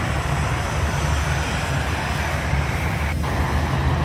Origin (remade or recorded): recorded